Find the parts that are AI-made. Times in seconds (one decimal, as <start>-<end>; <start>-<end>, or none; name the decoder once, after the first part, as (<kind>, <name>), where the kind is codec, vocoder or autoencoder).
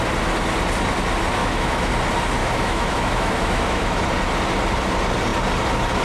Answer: 1.4-1.9 (autoencoder, DAC-VAE); 2.4-4.0